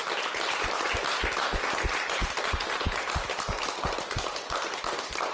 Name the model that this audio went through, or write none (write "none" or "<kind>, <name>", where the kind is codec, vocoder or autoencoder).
none